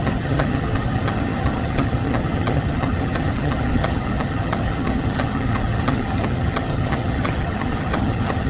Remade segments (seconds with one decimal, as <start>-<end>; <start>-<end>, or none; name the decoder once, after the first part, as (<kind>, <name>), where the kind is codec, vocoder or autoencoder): 0.0-8.5 (vocoder, HiFi-GAN)